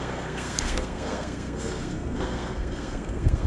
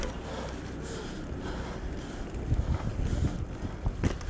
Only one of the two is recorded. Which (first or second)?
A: second